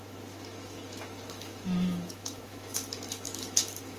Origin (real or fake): fake